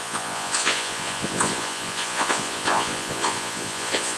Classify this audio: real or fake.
fake